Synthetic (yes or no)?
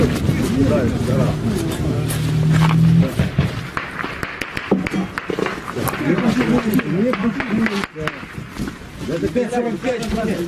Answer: no